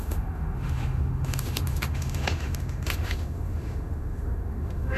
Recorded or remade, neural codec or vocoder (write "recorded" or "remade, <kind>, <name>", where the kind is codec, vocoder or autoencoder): remade, autoencoder, DAC-VAE